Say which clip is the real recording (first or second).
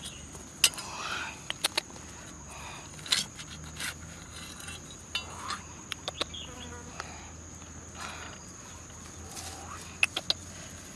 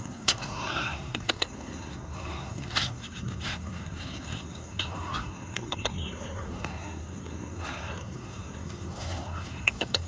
first